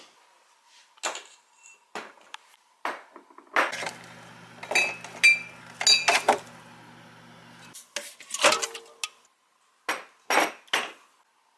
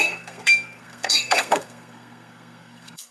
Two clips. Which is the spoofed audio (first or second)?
second